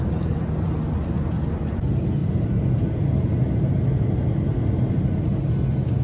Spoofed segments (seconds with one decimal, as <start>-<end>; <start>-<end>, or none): none